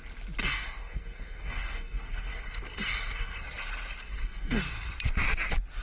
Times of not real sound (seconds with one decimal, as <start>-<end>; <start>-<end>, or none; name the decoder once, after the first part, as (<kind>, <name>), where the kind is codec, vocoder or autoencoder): 0.4-3.4 (codec, SNAC); 4.0-4.6